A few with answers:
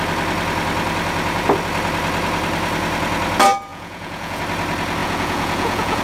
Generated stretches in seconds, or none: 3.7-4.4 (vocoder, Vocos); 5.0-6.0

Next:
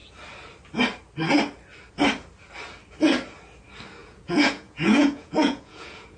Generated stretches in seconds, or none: 4.0-6.2 (vocoder, Vocos)

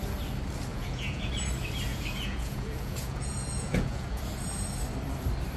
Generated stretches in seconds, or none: 0.7-1.3 (vocoder, Vocos); 1.9-4.2

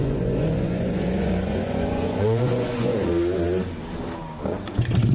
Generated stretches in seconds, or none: 0.0-3.1 (vocoder, Vocos)